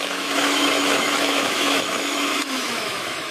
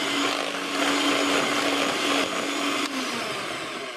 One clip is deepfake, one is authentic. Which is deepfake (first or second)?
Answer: first